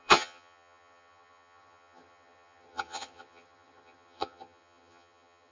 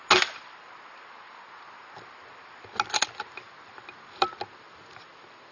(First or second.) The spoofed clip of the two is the first